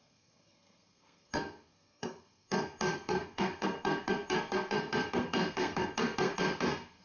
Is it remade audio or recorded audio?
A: remade